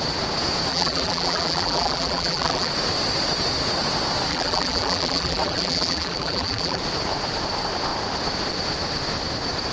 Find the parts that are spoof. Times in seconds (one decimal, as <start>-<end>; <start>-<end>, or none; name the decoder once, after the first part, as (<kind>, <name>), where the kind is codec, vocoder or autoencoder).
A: 0.7-2.7 (vocoder, BigVGAN v2); 4.3-6.8